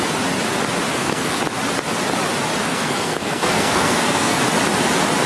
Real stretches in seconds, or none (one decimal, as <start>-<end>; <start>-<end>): 0.0-0.9; 1.4-2.6; 4.4-5.3